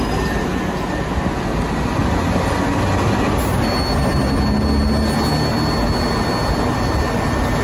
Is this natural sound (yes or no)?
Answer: yes